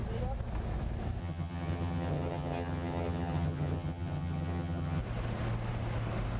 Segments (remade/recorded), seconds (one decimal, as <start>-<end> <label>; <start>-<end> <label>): 0.0-1.2 recorded; 1.2-5.0 remade; 5.0-6.4 recorded